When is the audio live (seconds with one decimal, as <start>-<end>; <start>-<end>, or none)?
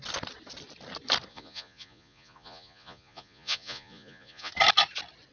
0.0-1.3; 4.5-5.3